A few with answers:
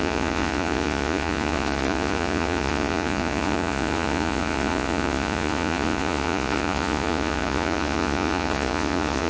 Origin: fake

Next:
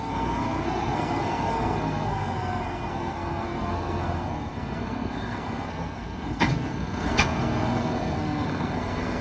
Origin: fake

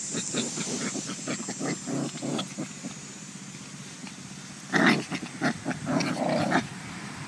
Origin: real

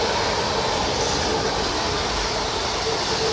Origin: real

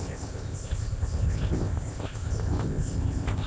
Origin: fake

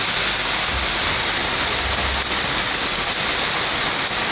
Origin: real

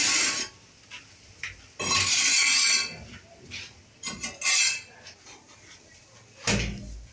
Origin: real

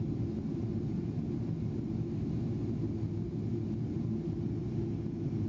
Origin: real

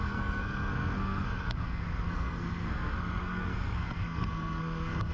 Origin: fake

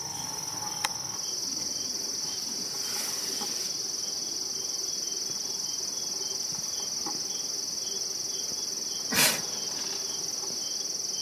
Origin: real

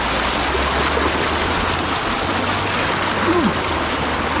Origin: real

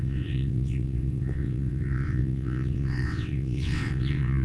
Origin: fake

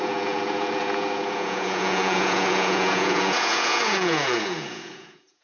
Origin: fake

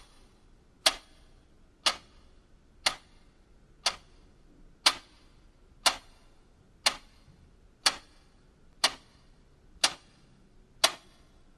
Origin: real